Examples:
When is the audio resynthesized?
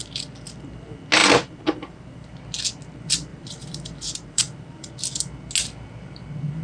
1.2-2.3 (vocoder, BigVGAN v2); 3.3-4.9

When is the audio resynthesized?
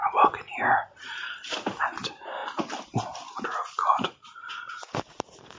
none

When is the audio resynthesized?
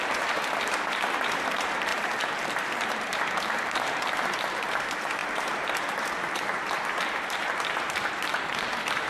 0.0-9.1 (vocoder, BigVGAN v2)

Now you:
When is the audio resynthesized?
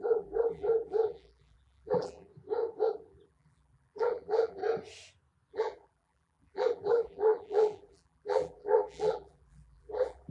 0.0-2.3 (vocoder, BigVGAN v2); 2.9-4.6; 5.5-10.3